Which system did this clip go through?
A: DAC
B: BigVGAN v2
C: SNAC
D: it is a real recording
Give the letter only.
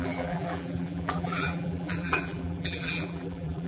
B